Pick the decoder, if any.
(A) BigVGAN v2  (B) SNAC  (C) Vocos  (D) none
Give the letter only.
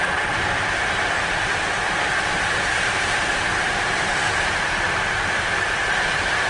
A